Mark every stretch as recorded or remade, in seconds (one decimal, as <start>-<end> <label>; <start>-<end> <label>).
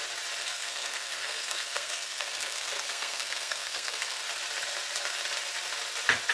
0.0-0.4 recorded; 0.4-4.2 remade; 4.2-6.3 recorded